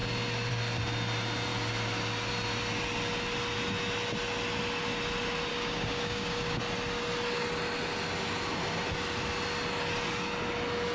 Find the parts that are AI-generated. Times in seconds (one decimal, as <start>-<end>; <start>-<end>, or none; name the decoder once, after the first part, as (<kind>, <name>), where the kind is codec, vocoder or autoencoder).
5.5-6.6 (codec, DAC)